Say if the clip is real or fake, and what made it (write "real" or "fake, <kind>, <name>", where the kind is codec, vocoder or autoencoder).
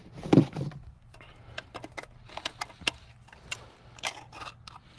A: real